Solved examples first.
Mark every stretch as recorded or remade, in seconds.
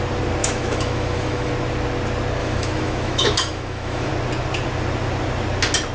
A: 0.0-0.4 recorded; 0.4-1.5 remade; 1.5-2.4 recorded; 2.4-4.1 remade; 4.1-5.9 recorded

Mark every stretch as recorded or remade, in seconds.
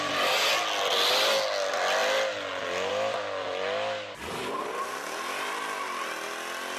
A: 0.0-6.8 recorded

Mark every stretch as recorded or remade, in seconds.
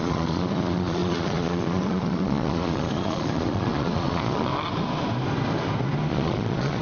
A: 0.0-4.5 remade; 4.5-6.1 recorded; 6.1-6.8 remade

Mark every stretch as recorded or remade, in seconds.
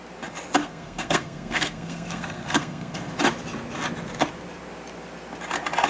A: 0.0-0.6 recorded; 0.6-3.1 remade; 3.1-5.9 recorded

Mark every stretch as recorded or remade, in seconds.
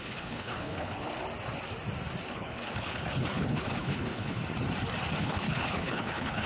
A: 0.0-1.1 remade; 1.1-2.3 recorded; 2.3-4.4 remade; 4.4-5.2 recorded; 5.2-6.5 remade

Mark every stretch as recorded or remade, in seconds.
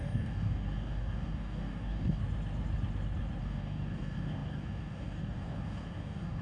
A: 0.0-2.2 remade; 2.2-3.4 recorded; 3.4-6.4 remade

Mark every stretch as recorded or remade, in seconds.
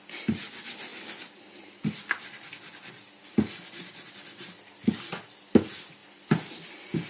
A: 0.0-7.1 recorded